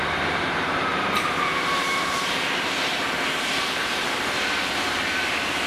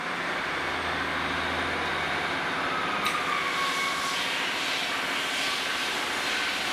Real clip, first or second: second